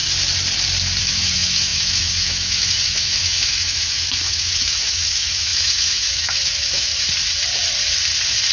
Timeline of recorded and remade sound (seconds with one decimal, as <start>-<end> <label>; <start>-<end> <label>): 0.0-1.0 recorded; 1.0-6.9 remade; 6.9-8.5 recorded